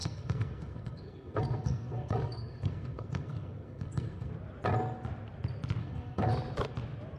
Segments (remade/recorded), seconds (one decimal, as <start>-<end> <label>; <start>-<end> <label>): 0.0-4.3 remade; 4.3-5.8 recorded; 5.8-6.3 remade; 6.3-7.2 recorded